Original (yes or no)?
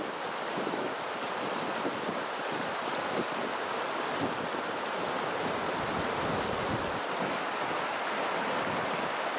yes